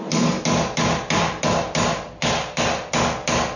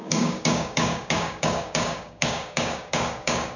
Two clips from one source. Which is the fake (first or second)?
second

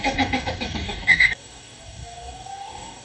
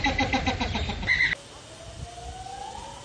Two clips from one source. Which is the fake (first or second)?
first